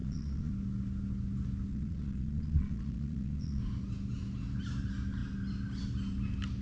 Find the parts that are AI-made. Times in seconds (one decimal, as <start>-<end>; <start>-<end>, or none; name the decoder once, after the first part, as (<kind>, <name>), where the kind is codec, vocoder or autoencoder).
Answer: 0.0-0.5 (vocoder, Vocos); 1.7-3.6